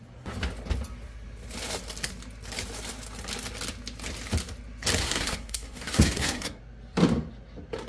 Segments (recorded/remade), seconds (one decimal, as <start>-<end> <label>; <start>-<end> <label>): 0.0-5.0 recorded; 5.0-6.6 remade; 6.6-7.9 recorded